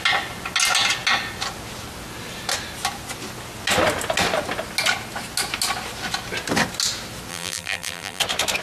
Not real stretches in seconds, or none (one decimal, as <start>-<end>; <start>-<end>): 7.3-8.2